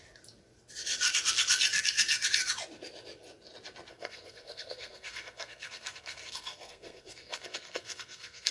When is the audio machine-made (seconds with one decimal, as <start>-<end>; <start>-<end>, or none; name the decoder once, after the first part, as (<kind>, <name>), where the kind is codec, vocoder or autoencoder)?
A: 3.9-8.5 (codec, SNAC)